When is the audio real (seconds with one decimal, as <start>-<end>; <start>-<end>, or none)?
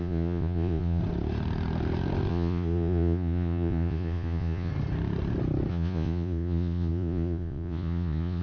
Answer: 1.0-2.3; 4.7-5.7